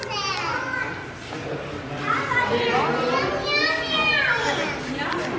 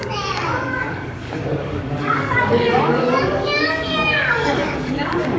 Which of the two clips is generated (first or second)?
second